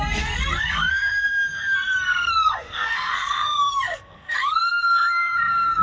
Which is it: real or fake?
fake